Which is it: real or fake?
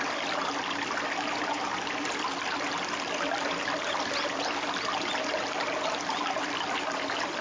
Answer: real